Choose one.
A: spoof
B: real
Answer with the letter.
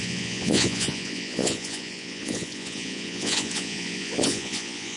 A